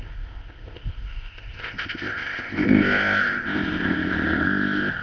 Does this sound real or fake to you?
fake